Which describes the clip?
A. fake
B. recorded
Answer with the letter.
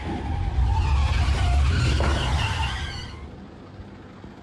B